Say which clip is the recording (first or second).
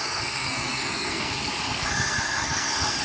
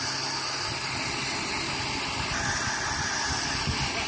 second